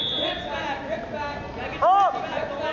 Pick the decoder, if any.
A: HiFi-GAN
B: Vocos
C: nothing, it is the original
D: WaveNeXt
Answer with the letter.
C